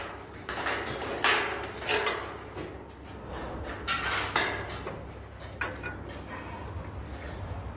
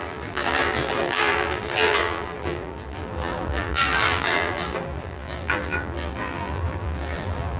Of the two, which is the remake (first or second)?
second